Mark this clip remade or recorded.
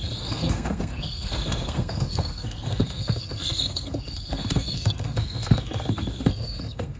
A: remade